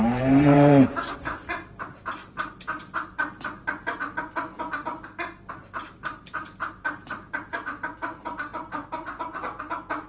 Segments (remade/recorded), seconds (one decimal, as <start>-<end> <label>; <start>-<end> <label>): 0.0-2.2 remade; 2.2-5.5 recorded; 5.5-10.1 remade